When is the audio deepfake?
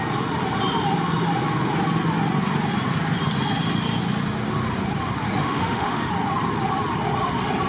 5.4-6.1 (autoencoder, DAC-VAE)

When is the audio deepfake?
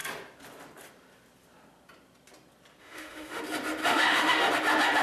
2.8-3.4 (autoencoder, DAC-VAE); 3.8-4.5